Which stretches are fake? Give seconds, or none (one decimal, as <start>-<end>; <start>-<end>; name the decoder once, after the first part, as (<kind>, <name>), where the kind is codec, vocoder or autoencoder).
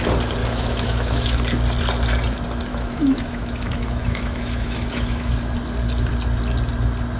0.4-1.4 (autoencoder, DAC-VAE); 2.7-5.3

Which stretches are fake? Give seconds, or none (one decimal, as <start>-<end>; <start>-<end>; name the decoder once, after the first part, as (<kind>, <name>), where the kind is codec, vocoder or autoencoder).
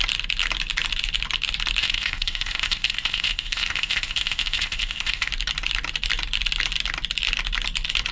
1.8-5.3 (codec, ZipCodec)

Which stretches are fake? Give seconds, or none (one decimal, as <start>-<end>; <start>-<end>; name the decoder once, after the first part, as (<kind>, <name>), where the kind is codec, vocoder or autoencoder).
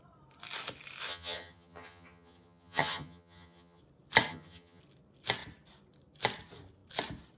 1.1-3.8 (vocoder, HiFi-GAN); 4.3-4.8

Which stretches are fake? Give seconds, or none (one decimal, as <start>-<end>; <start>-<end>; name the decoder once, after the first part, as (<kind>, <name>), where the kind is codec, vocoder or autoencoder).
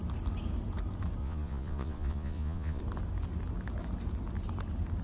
1.2-2.8 (vocoder, Vocos)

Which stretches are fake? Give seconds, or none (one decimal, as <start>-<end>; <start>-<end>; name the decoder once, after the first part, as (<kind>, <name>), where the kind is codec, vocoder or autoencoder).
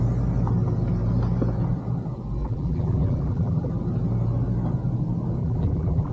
2.4-3.7 (vocoder, BigVGAN v2); 5.4-6.1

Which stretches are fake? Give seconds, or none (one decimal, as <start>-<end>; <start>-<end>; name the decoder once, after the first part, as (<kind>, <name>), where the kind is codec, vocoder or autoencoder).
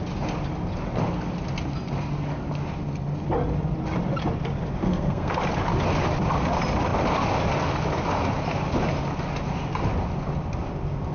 4.8-5.3 (codec, SNAC)